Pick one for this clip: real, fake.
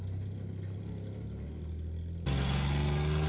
real